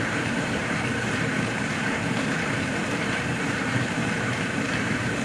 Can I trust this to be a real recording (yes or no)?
no